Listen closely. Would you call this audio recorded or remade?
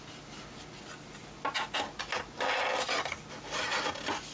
recorded